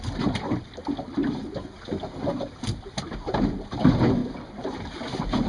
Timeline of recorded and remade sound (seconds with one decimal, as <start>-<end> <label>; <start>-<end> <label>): 0.0-5.5 recorded